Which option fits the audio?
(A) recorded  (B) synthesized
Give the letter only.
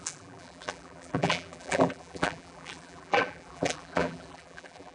B